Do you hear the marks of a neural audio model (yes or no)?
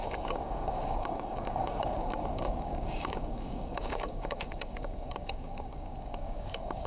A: yes